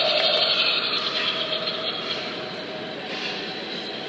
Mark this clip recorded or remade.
recorded